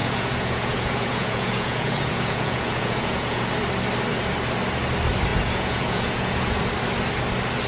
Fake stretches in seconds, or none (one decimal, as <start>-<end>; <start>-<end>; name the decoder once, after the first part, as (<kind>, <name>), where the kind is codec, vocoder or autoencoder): 0.0-3.5 (vocoder, Vocos); 5.3-6.6

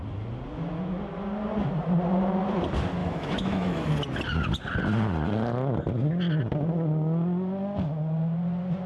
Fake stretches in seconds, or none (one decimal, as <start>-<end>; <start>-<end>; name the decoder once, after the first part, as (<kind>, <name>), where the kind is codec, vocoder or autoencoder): 3.0-3.9 (autoencoder, DAC-VAE)

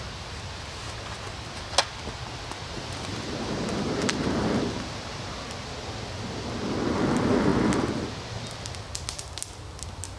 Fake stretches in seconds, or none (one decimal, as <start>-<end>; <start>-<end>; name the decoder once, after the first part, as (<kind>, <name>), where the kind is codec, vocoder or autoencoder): 3.1-5.4 (vocoder, BigVGAN v2)

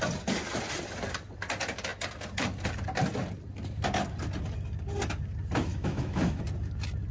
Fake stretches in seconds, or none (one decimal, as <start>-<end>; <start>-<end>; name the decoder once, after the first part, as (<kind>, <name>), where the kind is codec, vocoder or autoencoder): 5.7-6.4 (autoencoder, DAC-VAE)

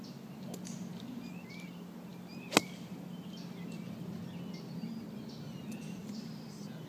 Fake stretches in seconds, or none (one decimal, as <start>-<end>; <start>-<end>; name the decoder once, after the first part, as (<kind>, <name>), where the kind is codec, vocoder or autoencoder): none

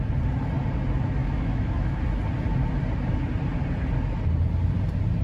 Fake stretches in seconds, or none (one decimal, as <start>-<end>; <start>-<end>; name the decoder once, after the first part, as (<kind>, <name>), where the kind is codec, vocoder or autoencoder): 1.2-2.0 (autoencoder, DAC-VAE)